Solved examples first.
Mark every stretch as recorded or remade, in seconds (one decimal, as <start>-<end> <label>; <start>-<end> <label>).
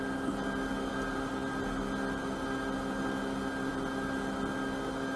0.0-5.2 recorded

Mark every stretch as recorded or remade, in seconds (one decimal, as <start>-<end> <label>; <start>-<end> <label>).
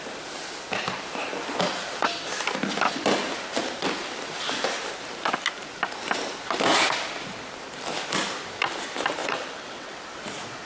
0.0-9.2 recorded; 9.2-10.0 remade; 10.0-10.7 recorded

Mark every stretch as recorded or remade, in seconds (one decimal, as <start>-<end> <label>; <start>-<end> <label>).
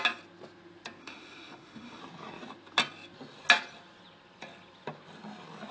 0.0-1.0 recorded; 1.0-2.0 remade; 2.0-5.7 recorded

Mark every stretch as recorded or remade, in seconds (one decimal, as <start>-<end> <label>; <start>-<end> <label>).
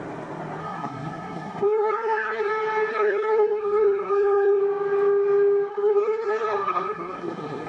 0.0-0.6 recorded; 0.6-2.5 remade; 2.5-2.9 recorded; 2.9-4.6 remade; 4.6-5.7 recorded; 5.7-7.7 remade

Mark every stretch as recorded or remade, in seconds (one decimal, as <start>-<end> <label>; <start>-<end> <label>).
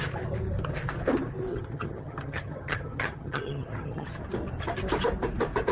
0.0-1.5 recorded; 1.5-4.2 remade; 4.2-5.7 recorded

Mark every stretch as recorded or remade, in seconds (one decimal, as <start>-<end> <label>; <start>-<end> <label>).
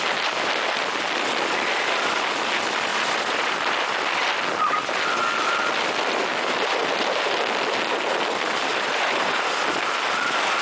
0.0-2.9 recorded; 2.9-3.7 remade; 3.7-8.7 recorded; 8.7-9.5 remade; 9.5-10.6 recorded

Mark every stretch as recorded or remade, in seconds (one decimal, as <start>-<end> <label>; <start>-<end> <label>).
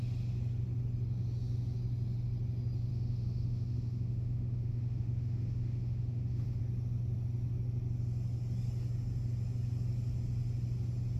0.0-2.9 recorded; 2.9-6.6 remade; 6.6-11.2 recorded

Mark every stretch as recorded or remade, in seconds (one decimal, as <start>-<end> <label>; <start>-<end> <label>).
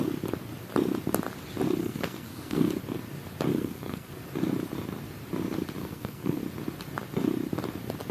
0.0-1.8 recorded; 1.8-2.7 remade; 2.7-3.5 recorded; 3.5-4.1 remade; 4.1-5.8 recorded; 5.8-6.4 remade; 6.4-8.1 recorded